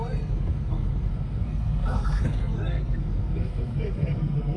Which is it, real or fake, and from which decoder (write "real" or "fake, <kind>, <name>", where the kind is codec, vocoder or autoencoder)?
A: fake, codec, SNAC